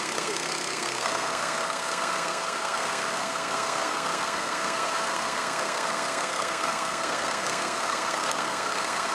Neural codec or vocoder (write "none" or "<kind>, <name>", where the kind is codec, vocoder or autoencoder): codec, SNAC